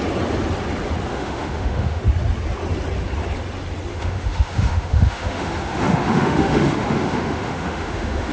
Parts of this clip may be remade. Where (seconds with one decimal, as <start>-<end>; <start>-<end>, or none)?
1.1-2.0; 3.9-8.3